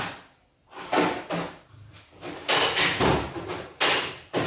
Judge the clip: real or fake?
real